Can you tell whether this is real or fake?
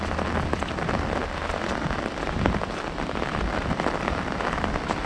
real